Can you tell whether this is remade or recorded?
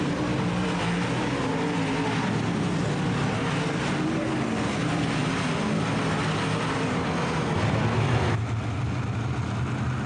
recorded